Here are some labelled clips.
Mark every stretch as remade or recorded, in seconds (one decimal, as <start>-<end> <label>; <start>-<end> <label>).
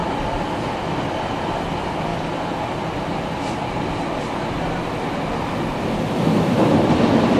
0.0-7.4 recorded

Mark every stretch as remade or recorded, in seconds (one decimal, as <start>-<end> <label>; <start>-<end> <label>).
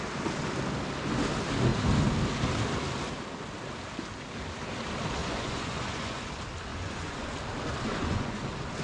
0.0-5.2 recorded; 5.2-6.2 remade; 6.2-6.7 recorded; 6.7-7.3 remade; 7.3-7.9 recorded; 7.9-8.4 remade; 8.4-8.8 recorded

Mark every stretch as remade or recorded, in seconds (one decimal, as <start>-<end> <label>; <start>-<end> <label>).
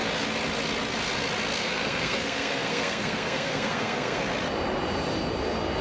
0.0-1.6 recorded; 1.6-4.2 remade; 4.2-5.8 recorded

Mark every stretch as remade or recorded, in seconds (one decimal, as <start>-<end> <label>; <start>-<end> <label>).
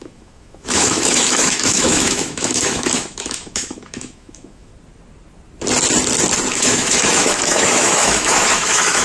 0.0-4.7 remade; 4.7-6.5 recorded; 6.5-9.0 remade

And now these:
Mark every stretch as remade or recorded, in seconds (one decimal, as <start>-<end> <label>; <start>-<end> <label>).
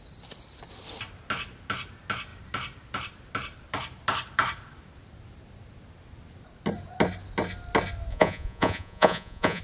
0.0-8.1 recorded; 8.1-9.6 remade